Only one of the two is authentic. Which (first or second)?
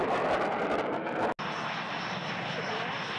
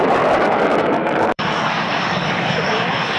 first